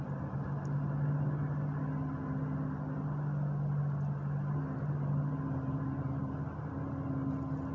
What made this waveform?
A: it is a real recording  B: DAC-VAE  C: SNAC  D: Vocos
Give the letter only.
A